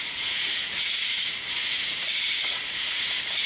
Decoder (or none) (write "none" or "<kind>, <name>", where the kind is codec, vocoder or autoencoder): vocoder, Vocos